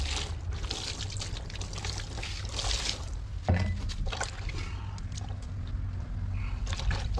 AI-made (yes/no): no